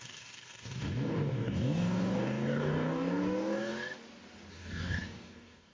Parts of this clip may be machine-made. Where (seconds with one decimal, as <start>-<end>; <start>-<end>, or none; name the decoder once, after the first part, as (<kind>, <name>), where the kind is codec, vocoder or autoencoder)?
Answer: 0.0-3.7 (codec, DAC); 4.5-5.7